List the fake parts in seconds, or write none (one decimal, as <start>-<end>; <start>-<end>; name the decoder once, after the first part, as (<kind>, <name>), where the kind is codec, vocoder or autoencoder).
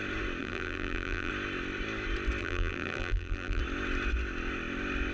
0.4-1.3 (vocoder, BigVGAN v2); 2.4-3.6